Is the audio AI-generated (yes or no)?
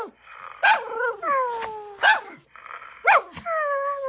no